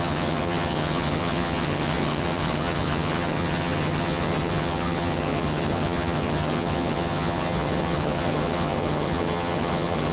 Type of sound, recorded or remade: remade